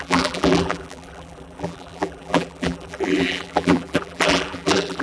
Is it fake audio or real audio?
fake